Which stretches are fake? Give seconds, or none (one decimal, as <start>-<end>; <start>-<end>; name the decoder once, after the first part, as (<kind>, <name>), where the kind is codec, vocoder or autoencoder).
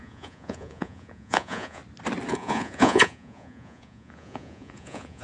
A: 0.0-1.8 (vocoder, Vocos); 2.3-5.2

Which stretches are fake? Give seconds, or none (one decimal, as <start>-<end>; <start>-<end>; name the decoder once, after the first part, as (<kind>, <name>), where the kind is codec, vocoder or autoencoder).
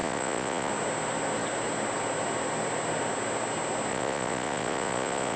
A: 0.0-0.7 (vocoder, Vocos); 3.9-5.4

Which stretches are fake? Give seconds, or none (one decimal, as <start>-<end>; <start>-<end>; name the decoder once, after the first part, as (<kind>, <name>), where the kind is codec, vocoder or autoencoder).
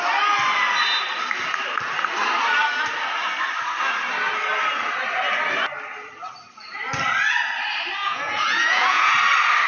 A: 8.0-9.1 (vocoder, Vocos)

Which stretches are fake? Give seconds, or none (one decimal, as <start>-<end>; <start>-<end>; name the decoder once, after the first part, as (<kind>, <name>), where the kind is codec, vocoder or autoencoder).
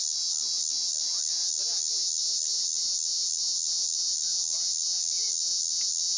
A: none